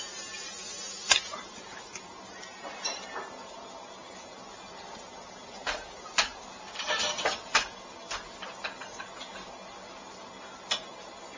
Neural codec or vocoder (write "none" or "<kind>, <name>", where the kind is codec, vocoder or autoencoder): none